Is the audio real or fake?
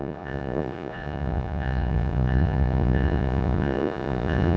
fake